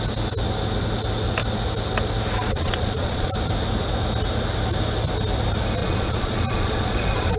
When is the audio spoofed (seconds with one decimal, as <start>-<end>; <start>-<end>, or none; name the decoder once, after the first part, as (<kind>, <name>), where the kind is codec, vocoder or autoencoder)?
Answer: 2.4-3.3 (vocoder, Vocos); 5.8-7.4